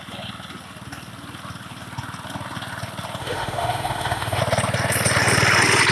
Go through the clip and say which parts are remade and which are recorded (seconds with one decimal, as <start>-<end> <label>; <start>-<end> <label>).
0.0-3.2 recorded; 3.2-4.4 remade; 4.4-5.9 recorded